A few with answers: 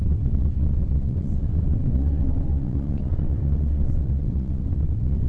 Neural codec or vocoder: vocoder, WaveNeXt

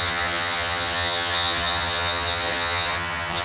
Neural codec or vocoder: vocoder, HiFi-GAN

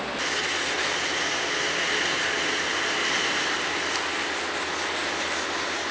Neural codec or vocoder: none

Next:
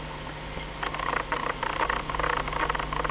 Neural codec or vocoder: none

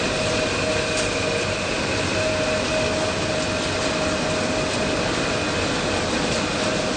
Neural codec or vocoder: none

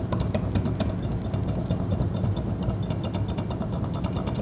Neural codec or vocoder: none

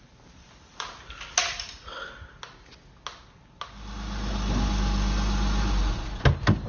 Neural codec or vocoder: none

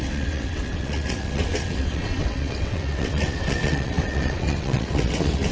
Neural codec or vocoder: vocoder, WaveNeXt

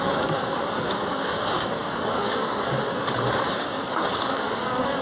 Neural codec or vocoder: codec, DAC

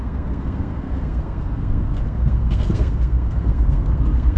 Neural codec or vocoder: codec, SNAC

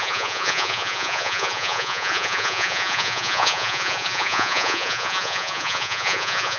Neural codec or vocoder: vocoder, Vocos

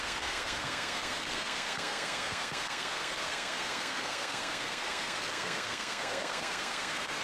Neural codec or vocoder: codec, SNAC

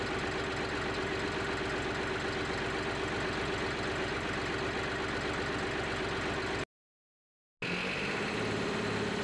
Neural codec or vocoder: none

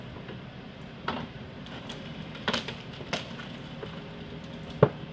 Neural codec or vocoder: none